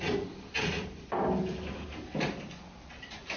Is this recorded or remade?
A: recorded